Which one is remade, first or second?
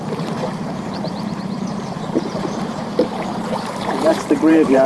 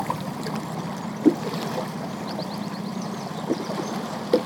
first